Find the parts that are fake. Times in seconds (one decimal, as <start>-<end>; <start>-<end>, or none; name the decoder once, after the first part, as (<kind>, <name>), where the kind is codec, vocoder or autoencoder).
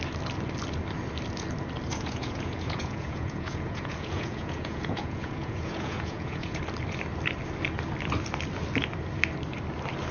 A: 1.9-6.6 (vocoder, Vocos)